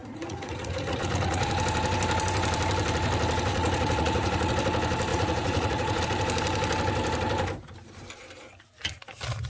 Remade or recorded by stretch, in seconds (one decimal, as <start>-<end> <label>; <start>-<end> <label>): 0.0-1.5 remade; 1.5-3.5 recorded; 3.5-4.5 remade; 4.5-5.1 recorded; 5.1-6.0 remade; 6.0-9.5 recorded